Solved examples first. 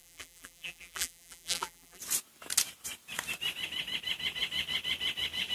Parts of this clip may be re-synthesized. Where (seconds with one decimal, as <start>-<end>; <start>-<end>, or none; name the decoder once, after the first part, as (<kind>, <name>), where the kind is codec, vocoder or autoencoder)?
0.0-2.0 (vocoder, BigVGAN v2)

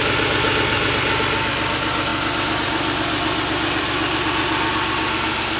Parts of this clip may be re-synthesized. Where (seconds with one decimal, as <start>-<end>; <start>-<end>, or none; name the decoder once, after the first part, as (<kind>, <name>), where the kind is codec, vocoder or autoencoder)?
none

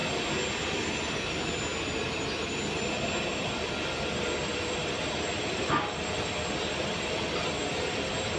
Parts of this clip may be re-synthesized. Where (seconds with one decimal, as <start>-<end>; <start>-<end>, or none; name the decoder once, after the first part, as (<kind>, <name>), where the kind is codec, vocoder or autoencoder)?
3.4-8.4 (vocoder, BigVGAN v2)

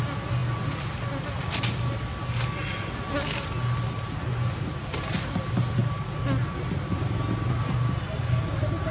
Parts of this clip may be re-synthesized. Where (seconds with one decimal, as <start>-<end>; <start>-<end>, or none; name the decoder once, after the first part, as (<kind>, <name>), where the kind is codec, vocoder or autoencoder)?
none

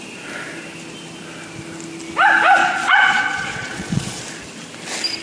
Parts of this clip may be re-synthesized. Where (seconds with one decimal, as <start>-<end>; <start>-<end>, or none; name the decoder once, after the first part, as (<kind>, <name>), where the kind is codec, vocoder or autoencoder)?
2.6-4.2 (vocoder, Vocos)

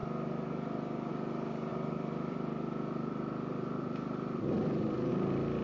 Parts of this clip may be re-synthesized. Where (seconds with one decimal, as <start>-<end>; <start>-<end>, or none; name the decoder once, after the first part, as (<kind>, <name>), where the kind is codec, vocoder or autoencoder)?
1.7-5.1 (vocoder, BigVGAN v2)